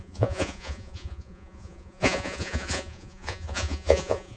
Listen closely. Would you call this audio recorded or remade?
remade